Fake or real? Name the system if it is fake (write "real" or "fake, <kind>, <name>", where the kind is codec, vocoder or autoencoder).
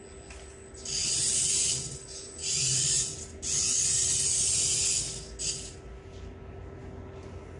real